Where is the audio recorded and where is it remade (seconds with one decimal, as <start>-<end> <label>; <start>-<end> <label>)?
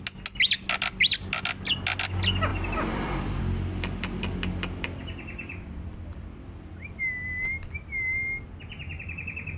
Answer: 0.0-2.5 recorded; 2.5-3.4 remade; 3.4-9.6 recorded